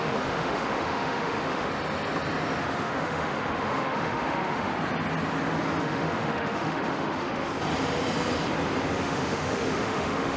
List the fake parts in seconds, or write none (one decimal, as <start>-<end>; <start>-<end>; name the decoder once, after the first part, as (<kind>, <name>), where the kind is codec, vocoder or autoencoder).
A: 0.0-1.7 (autoencoder, DAC-VAE); 2.6-4.7; 5.8-7.5; 9.0-10.4